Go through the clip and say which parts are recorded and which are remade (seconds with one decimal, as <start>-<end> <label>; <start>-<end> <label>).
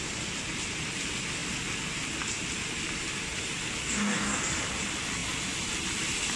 0.0-3.8 recorded; 3.8-4.4 remade; 4.4-6.4 recorded